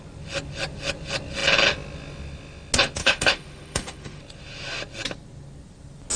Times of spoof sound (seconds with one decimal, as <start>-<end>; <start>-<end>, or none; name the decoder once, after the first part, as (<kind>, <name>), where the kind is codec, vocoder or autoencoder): 3.0-4.2 (autoencoder, DAC-VAE)